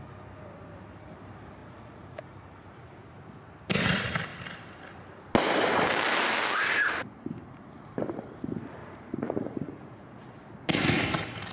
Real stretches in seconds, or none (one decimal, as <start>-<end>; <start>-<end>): 0.0-1.6; 2.2-8.8; 10.3-11.5